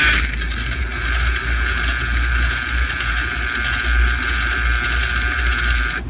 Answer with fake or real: real